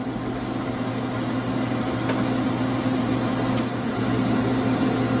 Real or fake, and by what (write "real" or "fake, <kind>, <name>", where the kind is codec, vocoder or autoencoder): real